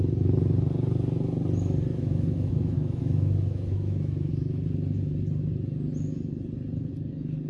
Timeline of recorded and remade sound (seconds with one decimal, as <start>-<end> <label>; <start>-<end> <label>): 0.0-1.9 recorded; 1.9-4.3 remade; 4.3-7.5 recorded

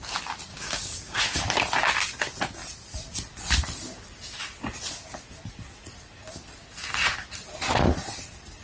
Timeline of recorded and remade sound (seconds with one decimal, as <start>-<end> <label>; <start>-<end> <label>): 0.0-0.5 recorded; 0.5-1.2 remade; 1.2-8.6 recorded